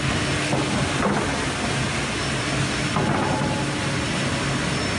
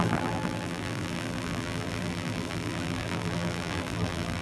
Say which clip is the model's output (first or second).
second